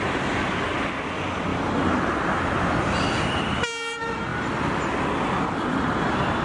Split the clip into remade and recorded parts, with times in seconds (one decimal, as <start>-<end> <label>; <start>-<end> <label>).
0.0-1.5 recorded; 1.5-2.3 remade; 2.3-6.4 recorded